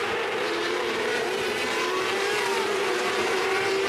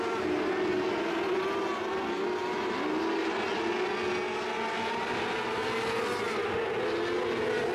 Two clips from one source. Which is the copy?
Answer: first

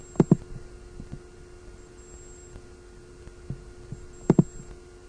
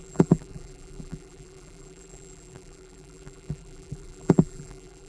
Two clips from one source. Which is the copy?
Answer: second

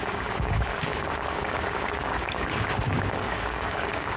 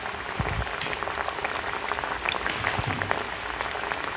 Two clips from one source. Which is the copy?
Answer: first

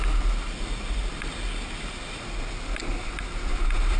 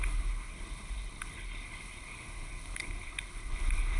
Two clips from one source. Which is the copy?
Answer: second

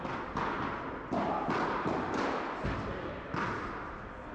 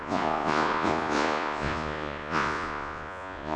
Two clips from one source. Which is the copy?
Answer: second